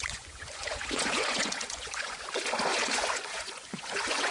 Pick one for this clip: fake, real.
fake